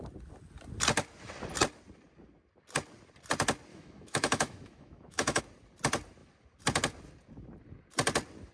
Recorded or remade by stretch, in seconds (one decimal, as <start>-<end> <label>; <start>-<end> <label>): 0.0-3.7 recorded; 3.7-5.4 remade; 5.4-8.5 recorded